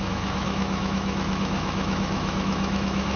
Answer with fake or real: fake